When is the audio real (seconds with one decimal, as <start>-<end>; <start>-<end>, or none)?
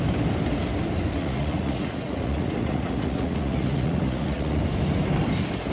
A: 0.0-1.2; 4.6-5.7